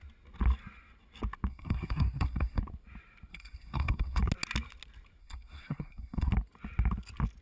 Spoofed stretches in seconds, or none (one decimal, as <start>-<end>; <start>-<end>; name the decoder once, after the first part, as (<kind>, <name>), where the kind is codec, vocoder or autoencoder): 1.5-2.6 (codec, SNAC); 3.3-4.2; 5.2-6.3